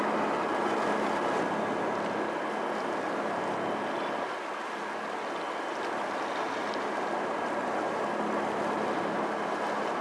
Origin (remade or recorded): recorded